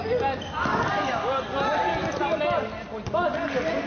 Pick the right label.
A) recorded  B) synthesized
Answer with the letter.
A